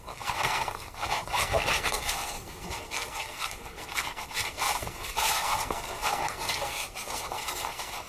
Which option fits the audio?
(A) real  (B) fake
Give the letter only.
B